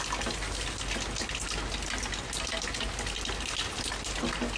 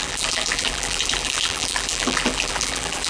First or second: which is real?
first